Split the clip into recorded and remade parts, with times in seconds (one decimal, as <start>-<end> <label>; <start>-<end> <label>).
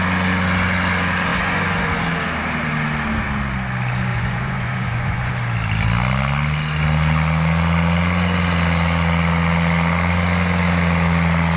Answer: 0.0-1.3 recorded; 1.3-1.9 remade; 1.9-4.1 recorded; 4.1-5.3 remade; 5.3-11.6 recorded